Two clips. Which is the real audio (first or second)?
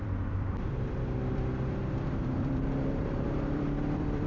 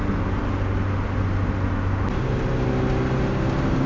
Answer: second